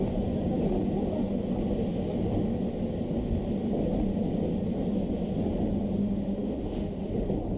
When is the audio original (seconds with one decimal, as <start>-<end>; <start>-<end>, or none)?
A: 0.0-6.0; 7.1-7.6